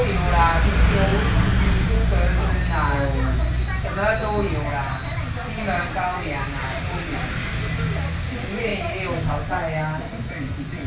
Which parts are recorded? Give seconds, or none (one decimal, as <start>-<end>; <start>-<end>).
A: 0.0-1.1; 1.9-10.1